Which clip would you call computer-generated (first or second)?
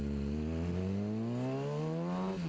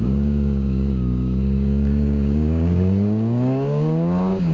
second